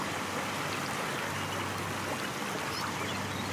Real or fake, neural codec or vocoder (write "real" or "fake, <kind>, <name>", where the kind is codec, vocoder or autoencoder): real